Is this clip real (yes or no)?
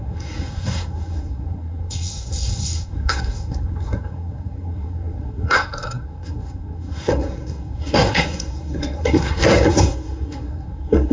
no